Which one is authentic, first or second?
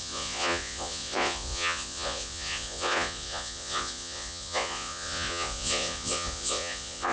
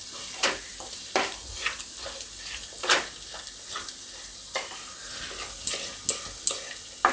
second